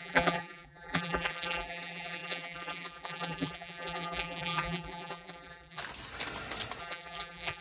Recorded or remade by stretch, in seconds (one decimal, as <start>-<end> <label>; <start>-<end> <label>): 0.0-5.8 remade; 5.8-6.8 recorded; 6.8-7.6 remade